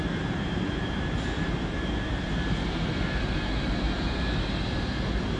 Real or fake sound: fake